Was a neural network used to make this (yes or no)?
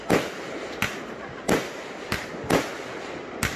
no